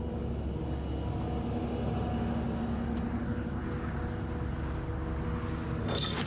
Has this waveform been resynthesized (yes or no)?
no